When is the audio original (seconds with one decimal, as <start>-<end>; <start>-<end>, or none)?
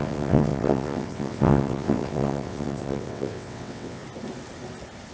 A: 4.0-5.1